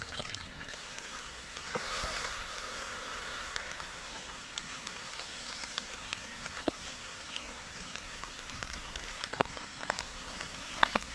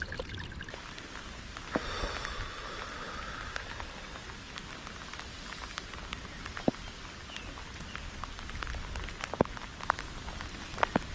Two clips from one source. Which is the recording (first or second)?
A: second